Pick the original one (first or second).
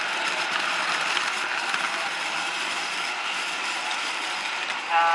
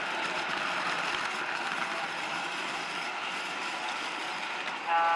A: second